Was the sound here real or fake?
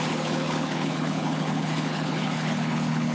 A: fake